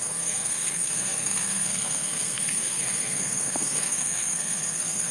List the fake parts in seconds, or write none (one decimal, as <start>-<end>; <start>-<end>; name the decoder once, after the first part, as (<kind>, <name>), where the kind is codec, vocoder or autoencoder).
0.0-5.1 (codec, SNAC)